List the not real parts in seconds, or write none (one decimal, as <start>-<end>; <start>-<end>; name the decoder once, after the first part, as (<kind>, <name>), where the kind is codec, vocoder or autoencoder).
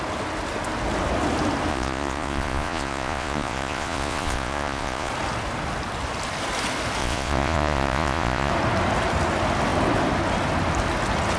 1.7-5.1 (vocoder, Vocos); 7.0-8.5